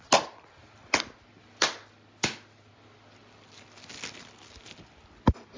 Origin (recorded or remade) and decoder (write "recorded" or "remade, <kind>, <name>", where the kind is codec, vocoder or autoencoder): recorded